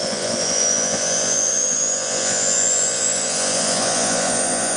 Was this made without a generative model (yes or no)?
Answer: no